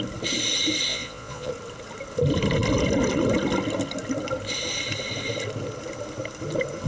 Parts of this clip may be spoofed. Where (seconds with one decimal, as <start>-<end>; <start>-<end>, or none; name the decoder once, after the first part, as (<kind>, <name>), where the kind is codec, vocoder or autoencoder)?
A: 0.9-1.5 (vocoder, Vocos)